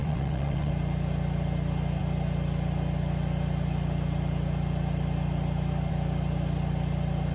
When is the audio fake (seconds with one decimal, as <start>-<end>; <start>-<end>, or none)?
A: 0.0-0.7